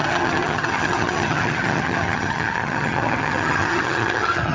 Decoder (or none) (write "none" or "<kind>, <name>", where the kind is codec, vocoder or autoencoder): vocoder, HiFi-GAN